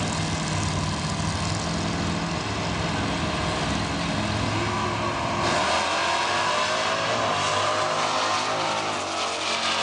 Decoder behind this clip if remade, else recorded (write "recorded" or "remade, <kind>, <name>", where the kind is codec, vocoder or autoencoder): recorded